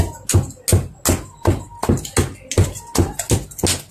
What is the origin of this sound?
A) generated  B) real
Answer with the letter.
B